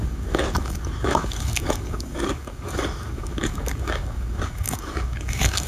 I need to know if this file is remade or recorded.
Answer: remade